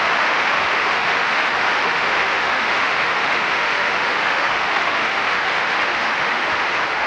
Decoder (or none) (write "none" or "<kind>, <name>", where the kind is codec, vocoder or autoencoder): autoencoder, DAC-VAE